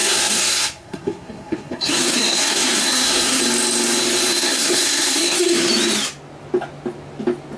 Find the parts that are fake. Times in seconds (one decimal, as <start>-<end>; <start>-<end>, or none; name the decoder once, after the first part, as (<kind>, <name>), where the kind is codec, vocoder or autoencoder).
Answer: 0.0-3.4 (codec, SNAC); 4.3-5.7